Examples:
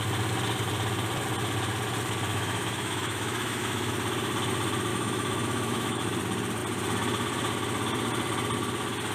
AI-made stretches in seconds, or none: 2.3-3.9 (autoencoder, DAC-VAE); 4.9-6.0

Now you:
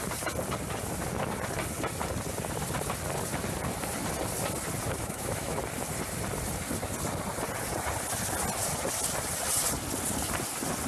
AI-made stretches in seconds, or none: 5.0-5.6 (autoencoder, DAC-VAE)

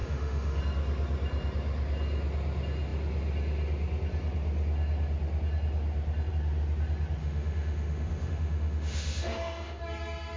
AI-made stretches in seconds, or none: 0.0-0.6 (autoencoder, DAC-VAE); 7.2-9.8

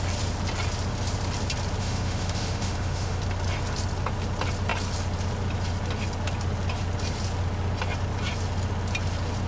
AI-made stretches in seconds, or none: 1.8-3.2 (autoencoder, DAC-VAE)